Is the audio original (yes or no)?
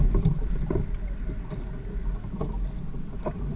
yes